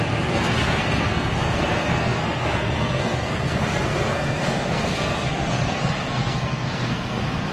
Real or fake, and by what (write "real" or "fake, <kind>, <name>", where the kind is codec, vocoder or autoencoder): fake, codec, SNAC